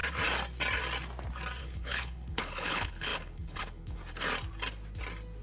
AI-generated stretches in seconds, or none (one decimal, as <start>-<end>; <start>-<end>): 1.6-4.0